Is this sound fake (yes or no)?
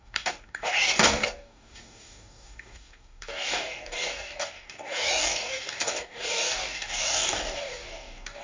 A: yes